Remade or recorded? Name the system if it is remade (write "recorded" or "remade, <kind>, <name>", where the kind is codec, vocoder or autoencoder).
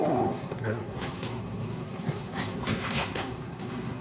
remade, codec, SNAC